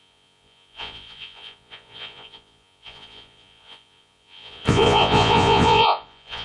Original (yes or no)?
no